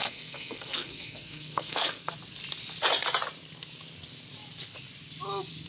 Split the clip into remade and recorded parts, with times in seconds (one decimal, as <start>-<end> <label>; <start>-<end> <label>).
0.0-2.1 remade; 2.1-5.7 recorded